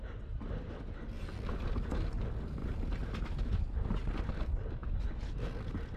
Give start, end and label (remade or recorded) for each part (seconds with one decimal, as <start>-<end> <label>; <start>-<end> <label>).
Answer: 0.0-6.0 recorded